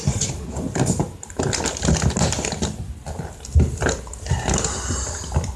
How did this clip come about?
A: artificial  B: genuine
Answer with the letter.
B